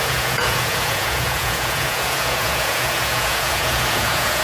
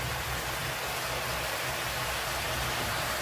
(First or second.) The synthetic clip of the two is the first